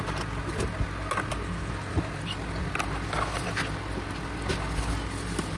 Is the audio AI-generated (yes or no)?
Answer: no